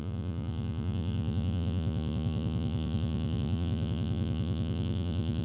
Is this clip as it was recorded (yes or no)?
no